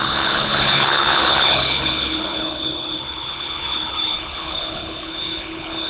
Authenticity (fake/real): fake